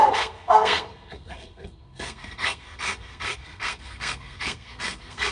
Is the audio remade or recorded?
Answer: remade